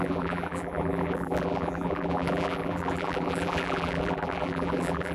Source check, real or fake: fake